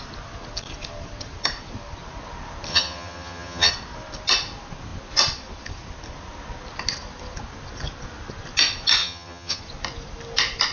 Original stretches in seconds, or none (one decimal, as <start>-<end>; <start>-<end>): 0.0-2.7; 3.7-9.0; 9.6-10.7